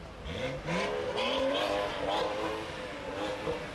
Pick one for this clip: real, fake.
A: real